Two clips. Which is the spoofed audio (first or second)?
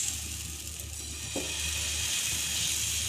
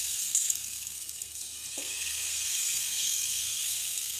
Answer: second